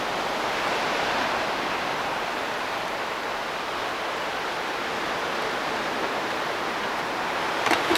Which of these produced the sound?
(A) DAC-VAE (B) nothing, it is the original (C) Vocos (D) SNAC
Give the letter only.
B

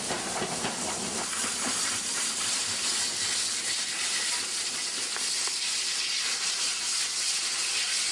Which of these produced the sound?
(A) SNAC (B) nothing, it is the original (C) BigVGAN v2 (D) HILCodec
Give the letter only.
B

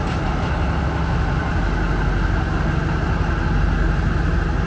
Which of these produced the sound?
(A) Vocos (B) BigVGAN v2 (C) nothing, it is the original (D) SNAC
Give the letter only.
C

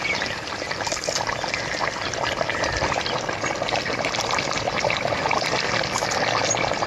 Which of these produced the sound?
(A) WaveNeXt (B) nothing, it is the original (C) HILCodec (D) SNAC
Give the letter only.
B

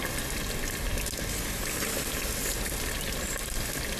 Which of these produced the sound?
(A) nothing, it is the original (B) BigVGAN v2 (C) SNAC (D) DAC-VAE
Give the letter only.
A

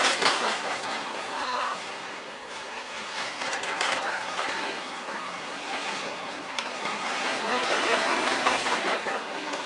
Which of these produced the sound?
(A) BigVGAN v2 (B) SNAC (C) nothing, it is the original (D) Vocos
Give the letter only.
B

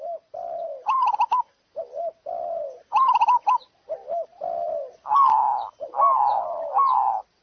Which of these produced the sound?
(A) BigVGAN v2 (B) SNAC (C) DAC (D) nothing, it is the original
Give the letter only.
D